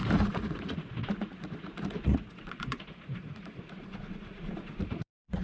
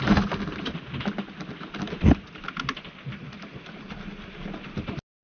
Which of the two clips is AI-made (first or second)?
first